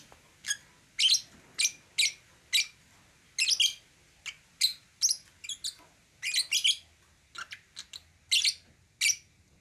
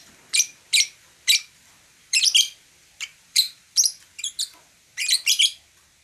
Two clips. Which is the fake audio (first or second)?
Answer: second